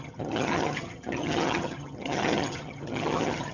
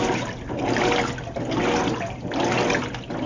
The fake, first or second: first